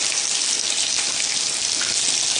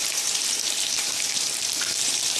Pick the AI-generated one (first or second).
second